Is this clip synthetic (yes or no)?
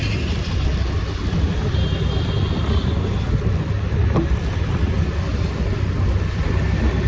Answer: no